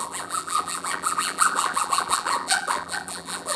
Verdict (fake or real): fake